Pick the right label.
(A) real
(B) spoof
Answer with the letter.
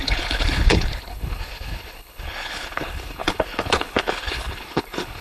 B